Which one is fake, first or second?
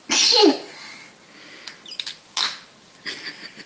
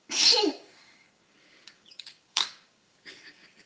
second